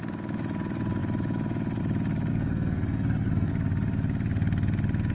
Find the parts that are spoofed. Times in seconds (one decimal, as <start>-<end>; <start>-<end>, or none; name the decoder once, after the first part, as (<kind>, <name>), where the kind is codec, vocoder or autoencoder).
2.3-3.5 (codec, SNAC)